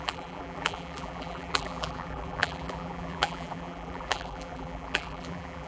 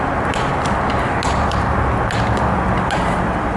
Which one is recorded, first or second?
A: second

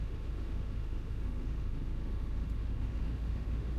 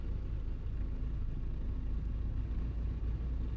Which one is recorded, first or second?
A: second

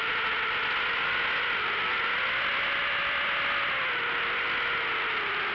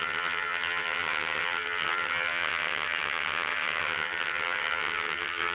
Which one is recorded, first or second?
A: first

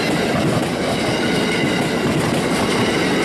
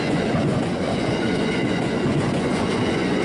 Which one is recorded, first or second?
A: first